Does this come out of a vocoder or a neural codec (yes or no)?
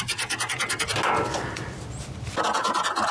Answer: no